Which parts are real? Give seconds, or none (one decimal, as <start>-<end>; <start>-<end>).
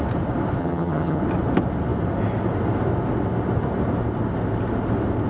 0.0-0.6; 1.2-5.3